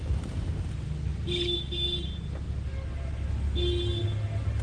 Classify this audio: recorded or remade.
recorded